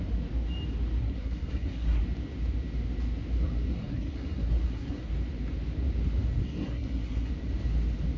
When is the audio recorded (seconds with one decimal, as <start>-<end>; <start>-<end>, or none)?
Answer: 0.0-1.0; 2.0-3.7; 5.1-6.4; 7.3-8.2